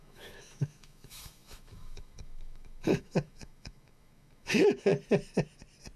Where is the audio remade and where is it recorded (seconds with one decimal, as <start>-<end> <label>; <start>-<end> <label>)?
0.0-4.9 remade; 4.9-6.0 recorded